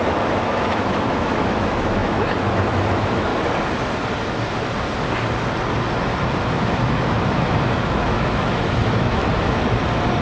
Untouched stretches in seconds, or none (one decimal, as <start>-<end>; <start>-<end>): 3.3-6.0; 9.2-10.2